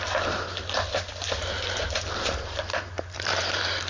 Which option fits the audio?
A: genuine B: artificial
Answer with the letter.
B